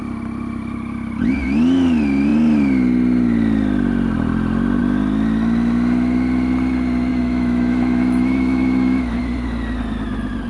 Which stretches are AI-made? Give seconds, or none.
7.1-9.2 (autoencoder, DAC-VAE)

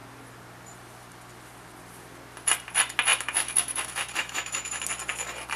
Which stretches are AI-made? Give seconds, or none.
3.1-4.8 (autoencoder, DAC-VAE)

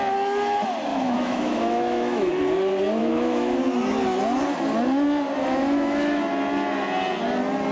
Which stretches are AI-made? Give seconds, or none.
0.9-2.3 (autoencoder, DAC-VAE); 3.0-3.6; 5.4-6.2